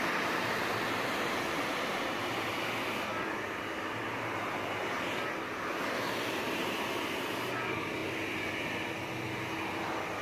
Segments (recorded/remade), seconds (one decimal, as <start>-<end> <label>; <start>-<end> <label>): 0.0-10.2 recorded